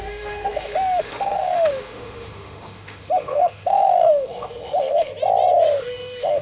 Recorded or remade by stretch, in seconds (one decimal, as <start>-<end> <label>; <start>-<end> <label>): 0.0-5.1 remade; 5.1-5.8 recorded; 5.8-6.4 remade